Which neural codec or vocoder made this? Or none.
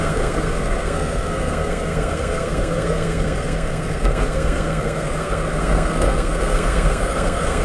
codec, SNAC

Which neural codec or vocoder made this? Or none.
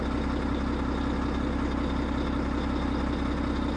none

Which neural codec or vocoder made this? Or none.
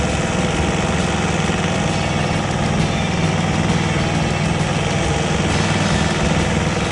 none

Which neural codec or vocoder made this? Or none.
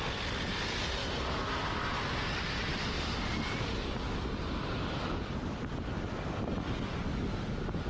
none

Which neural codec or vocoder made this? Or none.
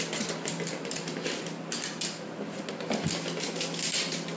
none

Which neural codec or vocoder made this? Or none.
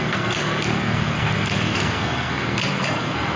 codec, SNAC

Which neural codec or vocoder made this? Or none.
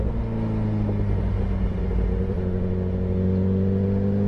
none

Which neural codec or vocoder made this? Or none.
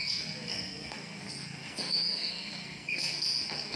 codec, SNAC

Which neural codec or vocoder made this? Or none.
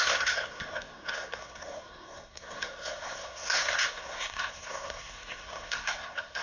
codec, SNAC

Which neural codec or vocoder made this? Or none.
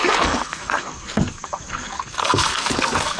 codec, SNAC